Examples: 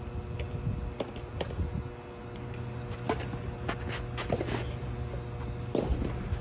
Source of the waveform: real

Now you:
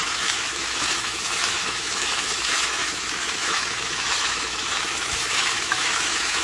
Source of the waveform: fake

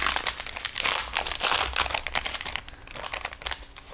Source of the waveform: real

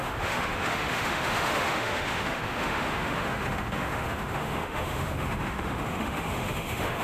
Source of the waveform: fake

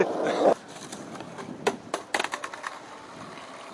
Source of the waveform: real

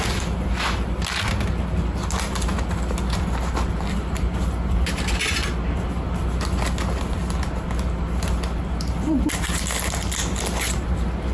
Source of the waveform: real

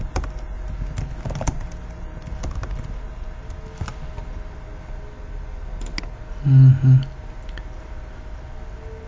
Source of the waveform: real